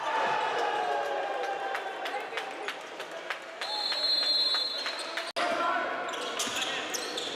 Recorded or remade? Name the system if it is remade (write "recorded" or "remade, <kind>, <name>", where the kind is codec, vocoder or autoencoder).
recorded